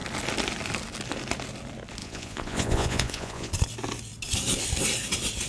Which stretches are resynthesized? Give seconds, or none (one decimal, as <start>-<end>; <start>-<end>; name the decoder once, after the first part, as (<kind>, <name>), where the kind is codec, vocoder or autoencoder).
2.0-3.5 (vocoder, Vocos)